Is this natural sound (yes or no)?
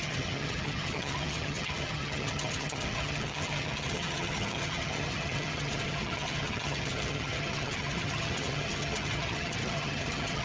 no